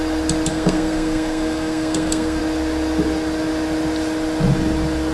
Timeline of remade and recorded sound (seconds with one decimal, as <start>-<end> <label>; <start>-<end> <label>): 0.0-0.5 recorded; 0.5-2.4 remade; 2.4-5.1 recorded